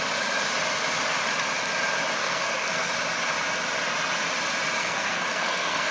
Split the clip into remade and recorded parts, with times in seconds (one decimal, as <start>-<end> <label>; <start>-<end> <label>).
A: 0.0-2.2 recorded; 2.2-2.9 remade; 2.9-4.8 recorded; 4.8-5.9 remade